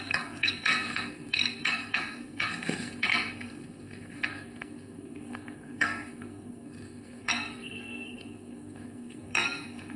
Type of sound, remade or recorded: remade